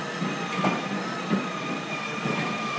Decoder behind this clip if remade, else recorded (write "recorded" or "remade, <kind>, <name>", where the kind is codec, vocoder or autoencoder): remade, vocoder, BigVGAN v2